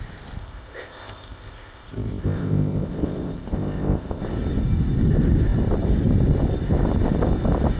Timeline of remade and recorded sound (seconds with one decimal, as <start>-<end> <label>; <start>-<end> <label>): 0.0-0.4 recorded; 0.4-4.2 remade; 4.2-7.8 recorded